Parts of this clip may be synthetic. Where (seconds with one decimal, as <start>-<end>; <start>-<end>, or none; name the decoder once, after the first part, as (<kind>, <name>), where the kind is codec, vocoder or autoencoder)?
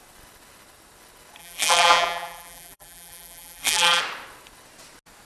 1.4-4.0 (vocoder, BigVGAN v2)